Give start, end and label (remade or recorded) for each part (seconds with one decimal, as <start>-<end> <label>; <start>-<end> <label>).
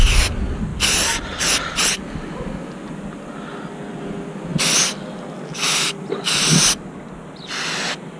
0.0-8.2 recorded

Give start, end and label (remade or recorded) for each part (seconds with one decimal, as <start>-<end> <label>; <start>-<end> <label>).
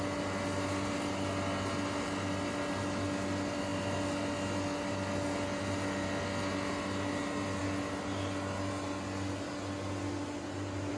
0.0-11.0 recorded